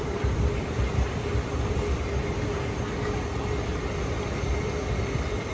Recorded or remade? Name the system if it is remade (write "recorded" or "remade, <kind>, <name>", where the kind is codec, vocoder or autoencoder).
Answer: recorded